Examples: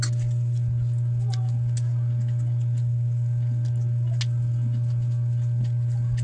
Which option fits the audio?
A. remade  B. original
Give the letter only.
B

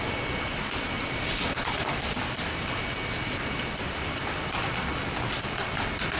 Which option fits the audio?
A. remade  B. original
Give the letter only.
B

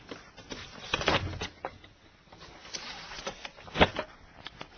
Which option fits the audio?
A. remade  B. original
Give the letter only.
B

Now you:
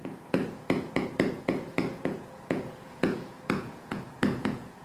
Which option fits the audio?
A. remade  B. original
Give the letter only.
A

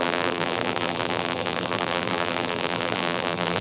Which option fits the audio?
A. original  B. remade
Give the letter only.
B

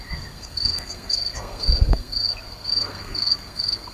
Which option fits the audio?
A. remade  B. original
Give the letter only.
A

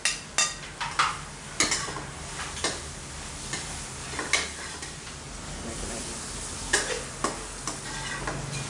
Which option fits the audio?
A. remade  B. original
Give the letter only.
B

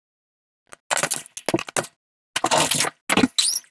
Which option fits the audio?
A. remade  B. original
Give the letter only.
B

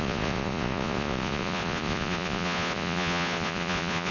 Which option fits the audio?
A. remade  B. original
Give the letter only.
A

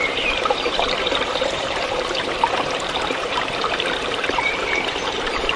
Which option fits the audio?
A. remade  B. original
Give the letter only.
A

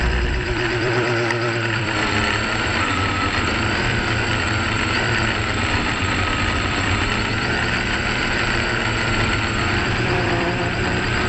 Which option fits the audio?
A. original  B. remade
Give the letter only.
B